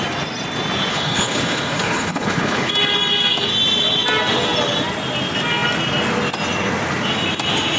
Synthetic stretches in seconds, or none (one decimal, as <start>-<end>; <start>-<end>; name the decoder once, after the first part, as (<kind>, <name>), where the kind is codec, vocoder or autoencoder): 0.9-2.7 (codec, HILCodec)